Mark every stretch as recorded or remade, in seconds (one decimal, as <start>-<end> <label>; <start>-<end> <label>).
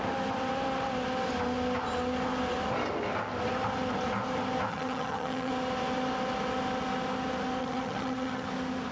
0.0-4.7 recorded; 4.7-5.5 remade; 5.5-7.6 recorded; 7.6-8.5 remade; 8.5-8.9 recorded